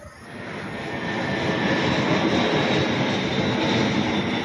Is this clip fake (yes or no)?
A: no